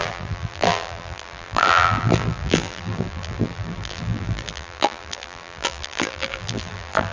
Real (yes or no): no